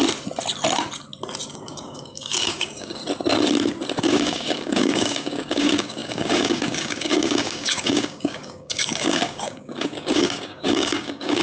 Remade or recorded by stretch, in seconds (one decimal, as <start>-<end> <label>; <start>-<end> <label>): 0.0-1.5 recorded; 1.5-3.0 remade; 3.0-4.0 recorded; 4.0-11.4 remade